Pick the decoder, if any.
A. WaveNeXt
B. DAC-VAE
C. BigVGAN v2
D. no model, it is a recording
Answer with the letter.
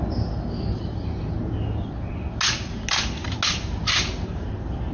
D